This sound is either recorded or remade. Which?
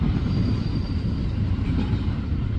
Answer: remade